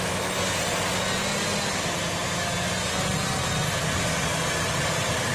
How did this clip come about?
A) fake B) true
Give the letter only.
B